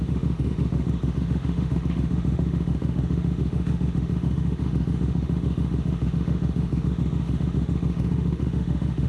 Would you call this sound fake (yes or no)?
yes